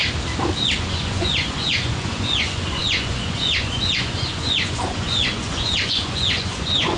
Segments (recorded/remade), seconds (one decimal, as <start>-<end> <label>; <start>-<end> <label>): 0.0-0.8 recorded; 0.8-7.0 remade